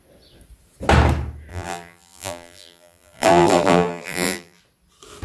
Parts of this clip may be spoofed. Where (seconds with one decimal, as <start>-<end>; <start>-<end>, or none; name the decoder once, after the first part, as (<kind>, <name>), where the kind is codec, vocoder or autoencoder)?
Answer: 1.5-4.6 (vocoder, BigVGAN v2)